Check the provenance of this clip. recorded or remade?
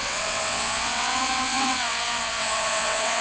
remade